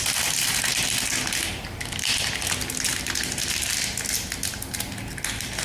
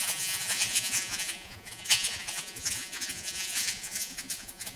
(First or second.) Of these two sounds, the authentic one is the first